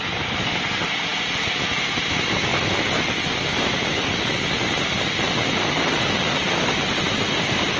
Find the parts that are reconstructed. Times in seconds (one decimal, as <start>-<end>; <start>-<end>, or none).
none